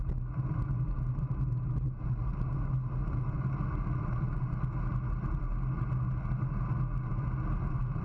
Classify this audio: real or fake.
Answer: real